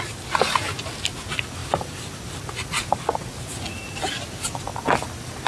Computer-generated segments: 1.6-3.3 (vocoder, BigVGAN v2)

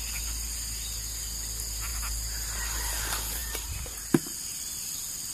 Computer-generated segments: 3.4-4.0 (vocoder, BigVGAN v2)